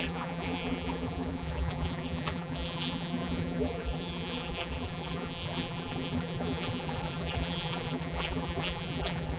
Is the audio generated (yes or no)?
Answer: yes